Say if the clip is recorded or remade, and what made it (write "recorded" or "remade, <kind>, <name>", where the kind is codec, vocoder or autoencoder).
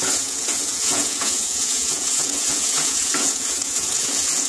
remade, vocoder, Vocos